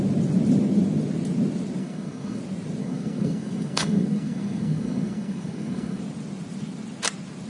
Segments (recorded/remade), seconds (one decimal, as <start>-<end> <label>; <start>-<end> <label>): 0.0-1.8 recorded; 1.8-2.4 remade; 2.4-2.8 recorded; 2.8-6.0 remade; 6.0-7.5 recorded